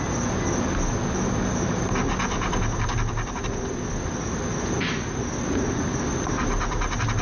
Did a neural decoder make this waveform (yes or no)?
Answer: no